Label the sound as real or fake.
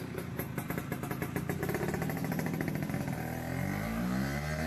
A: real